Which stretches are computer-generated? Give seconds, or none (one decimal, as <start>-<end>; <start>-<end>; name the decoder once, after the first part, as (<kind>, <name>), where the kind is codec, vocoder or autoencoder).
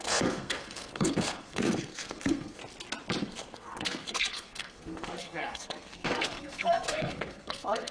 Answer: 0.0-2.6 (codec, SNAC); 3.2-7.9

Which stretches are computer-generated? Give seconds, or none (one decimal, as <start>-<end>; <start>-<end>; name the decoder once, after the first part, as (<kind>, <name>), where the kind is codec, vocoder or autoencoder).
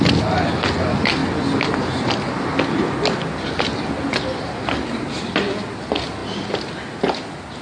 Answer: none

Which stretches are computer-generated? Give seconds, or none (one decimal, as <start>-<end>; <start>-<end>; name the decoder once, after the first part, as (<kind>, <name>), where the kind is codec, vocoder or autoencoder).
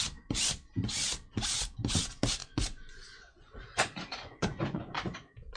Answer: 2.4-5.6 (vocoder, Vocos)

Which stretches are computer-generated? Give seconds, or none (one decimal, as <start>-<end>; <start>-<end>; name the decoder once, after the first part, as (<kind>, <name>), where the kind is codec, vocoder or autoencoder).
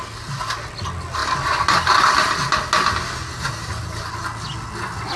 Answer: none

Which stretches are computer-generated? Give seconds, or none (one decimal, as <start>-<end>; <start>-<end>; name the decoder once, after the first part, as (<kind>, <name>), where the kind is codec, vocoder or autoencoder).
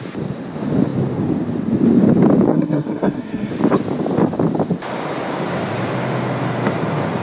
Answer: 2.5-3.5 (codec, SNAC)